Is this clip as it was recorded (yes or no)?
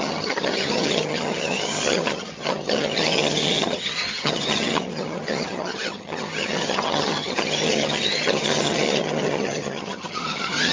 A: no